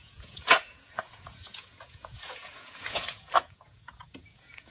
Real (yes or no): no